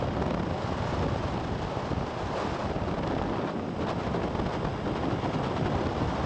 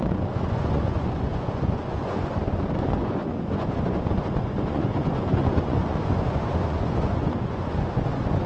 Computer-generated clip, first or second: second